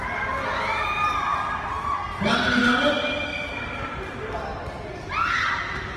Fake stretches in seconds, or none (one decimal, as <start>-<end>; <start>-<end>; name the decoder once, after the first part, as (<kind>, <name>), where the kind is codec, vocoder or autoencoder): none